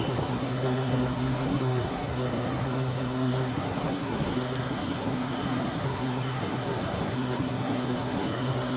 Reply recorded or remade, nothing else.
remade